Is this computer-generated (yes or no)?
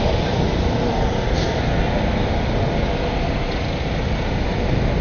no